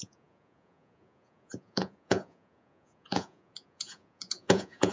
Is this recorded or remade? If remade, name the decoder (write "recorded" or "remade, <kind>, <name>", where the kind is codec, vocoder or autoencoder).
remade, vocoder, Vocos